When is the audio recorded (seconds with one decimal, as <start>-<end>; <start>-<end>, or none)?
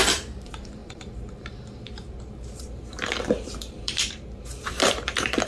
none